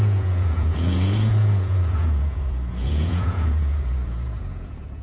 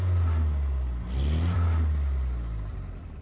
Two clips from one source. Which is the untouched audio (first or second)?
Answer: second